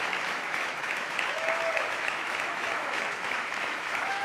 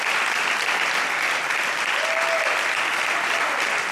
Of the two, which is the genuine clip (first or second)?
second